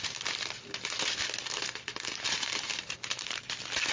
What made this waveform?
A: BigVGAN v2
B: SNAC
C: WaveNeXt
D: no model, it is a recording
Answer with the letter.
A